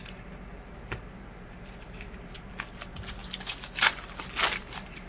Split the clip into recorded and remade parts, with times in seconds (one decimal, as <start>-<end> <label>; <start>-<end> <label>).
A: 0.0-3.2 remade; 3.2-4.6 recorded; 4.6-5.1 remade